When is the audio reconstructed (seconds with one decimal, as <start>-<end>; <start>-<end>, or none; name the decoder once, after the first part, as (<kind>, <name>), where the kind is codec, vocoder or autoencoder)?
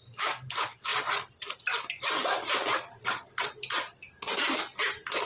none